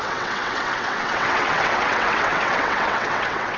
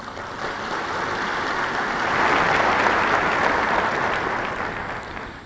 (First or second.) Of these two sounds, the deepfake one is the first